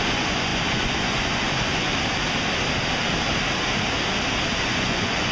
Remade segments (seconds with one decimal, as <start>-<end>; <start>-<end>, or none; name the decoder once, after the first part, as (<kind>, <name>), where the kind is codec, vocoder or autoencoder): 0.0-1.9 (vocoder, Vocos); 4.5-5.3